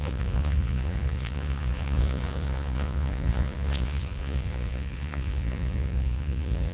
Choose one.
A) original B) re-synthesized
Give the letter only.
B